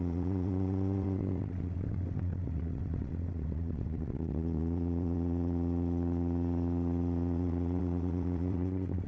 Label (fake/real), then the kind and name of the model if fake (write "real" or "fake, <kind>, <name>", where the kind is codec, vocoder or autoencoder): fake, vocoder, WaveNeXt